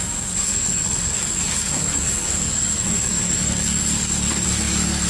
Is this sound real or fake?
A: fake